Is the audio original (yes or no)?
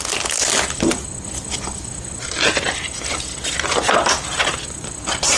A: yes